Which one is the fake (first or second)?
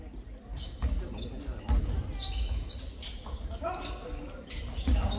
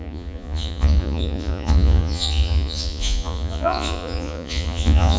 second